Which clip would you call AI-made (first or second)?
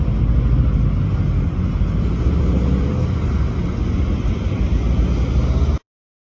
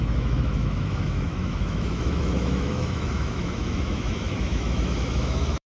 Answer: second